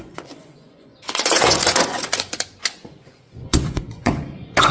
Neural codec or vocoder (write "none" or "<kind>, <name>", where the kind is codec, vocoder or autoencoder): vocoder, Vocos